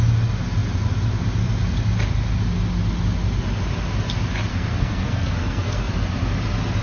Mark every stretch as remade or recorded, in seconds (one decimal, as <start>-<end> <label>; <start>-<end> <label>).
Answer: 0.0-4.5 recorded; 4.5-5.9 remade; 5.9-6.8 recorded